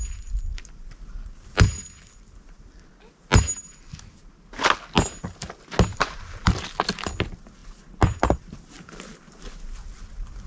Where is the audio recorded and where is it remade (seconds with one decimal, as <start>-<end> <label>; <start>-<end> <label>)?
0.0-5.9 recorded; 5.9-6.7 remade; 6.7-10.5 recorded